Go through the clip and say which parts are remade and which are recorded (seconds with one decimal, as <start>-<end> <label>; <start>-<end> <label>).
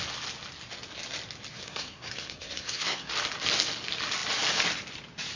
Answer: 0.0-1.5 recorded; 1.5-3.1 remade; 3.1-5.4 recorded